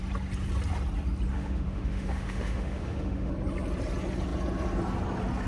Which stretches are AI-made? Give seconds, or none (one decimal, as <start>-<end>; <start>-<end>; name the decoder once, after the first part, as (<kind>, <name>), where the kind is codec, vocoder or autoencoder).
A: 1.3-3.3 (autoencoder, DAC-VAE)